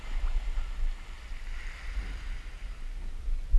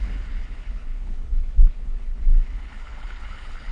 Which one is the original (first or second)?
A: first